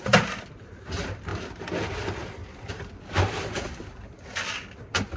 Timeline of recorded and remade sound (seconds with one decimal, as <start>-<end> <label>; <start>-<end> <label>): 0.0-1.3 recorded; 1.3-1.9 remade; 1.9-2.4 recorded; 2.4-3.0 remade; 3.0-5.2 recorded